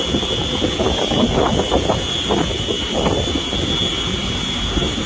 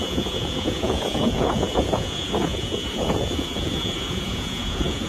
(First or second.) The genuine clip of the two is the first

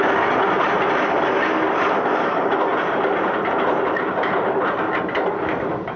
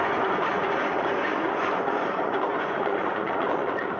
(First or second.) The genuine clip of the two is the first